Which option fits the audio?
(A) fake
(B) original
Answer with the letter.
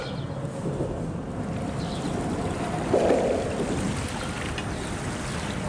B